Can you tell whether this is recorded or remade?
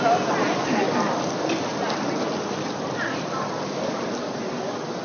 recorded